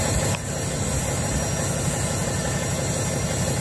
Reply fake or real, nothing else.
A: real